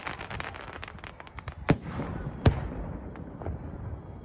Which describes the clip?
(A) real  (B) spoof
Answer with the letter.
A